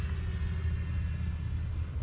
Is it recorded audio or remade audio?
recorded